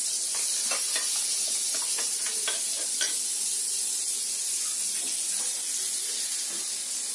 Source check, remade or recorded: recorded